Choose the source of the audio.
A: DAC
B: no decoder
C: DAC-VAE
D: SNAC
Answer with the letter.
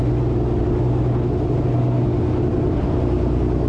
B